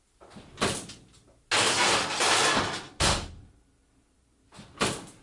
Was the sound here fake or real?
real